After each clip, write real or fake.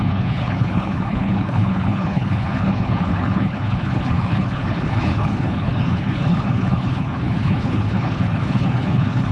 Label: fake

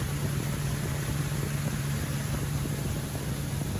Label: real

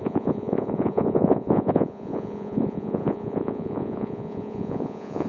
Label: fake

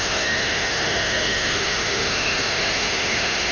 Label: fake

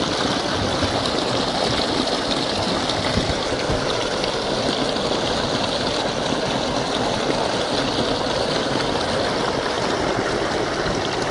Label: real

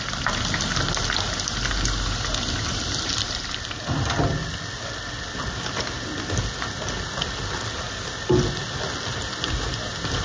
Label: real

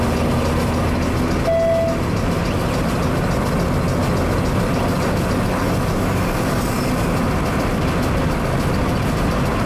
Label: real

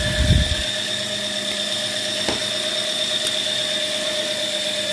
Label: real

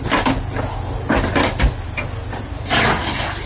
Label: real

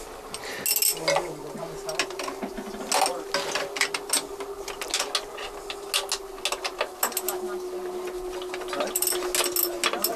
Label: real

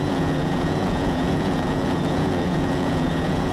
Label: fake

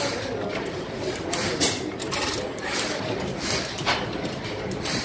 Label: real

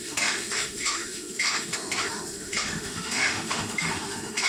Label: fake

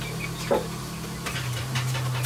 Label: real